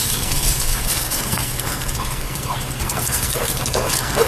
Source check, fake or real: fake